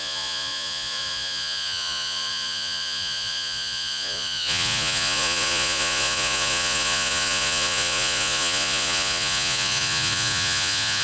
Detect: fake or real fake